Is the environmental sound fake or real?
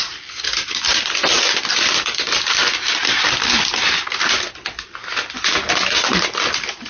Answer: real